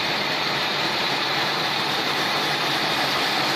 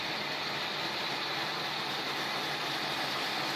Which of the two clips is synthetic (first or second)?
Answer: first